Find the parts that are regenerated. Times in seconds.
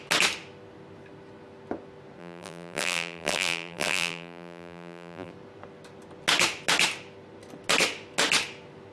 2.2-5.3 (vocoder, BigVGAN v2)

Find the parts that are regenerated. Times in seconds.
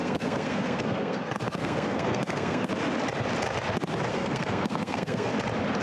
0.0-2.7 (codec, SNAC); 4.1-5.3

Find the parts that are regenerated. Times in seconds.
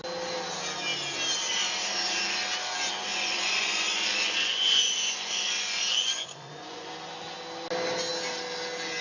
3.1-6.9 (vocoder, Vocos)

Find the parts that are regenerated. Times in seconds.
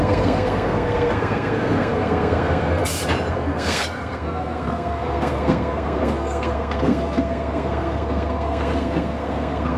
0.0-2.8 (codec, SNAC); 3.3-9.8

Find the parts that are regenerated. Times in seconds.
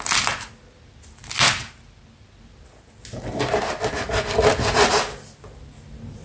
none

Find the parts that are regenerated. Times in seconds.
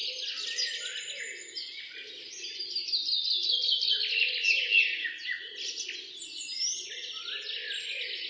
none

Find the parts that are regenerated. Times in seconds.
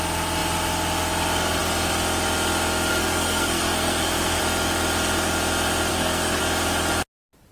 2.9-4.4 (codec, SNAC); 5.9-6.4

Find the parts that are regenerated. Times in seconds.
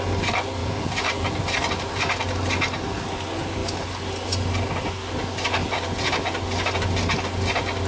0.6-1.4 (vocoder, Vocos); 5.6-6.1